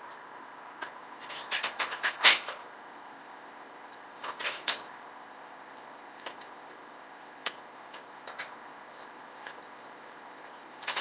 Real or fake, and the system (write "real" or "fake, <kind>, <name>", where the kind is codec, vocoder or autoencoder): fake, codec, ZipCodec